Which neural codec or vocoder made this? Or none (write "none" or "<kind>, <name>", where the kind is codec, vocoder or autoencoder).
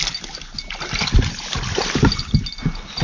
none